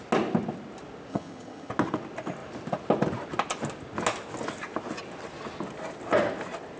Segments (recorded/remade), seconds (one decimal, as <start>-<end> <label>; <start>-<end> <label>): 0.0-1.1 recorded; 1.1-1.7 remade; 1.7-6.8 recorded